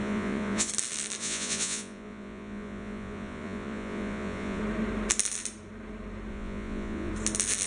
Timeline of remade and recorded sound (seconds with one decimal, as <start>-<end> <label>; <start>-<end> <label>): 0.0-0.7 remade; 0.7-1.2 recorded; 1.2-4.6 remade; 4.6-6.3 recorded; 6.3-7.1 remade; 7.1-7.7 recorded